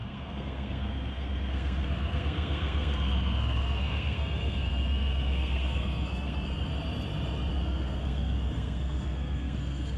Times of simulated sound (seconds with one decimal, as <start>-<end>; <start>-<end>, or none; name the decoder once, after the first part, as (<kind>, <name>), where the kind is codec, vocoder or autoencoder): 0.0-6.7 (codec, SNAC); 7.5-10.0

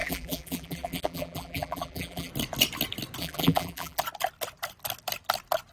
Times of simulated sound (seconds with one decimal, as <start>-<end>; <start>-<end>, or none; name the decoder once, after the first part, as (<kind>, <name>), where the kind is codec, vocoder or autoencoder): 0.0-2.3 (vocoder, BigVGAN v2); 3.2-4.0

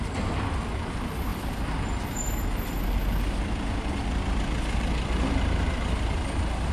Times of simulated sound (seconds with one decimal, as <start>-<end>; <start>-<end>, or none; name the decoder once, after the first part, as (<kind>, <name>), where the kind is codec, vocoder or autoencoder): none

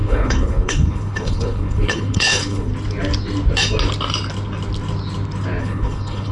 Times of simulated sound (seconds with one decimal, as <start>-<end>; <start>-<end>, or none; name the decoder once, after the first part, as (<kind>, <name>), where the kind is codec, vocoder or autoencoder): 0.0-2.7 (codec, HILCodec); 5.6-6.3